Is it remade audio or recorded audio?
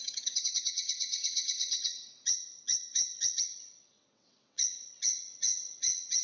remade